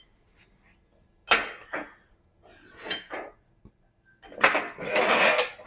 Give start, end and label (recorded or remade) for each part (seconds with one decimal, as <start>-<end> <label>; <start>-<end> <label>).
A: 0.0-1.6 recorded; 1.6-3.6 remade; 3.6-5.7 recorded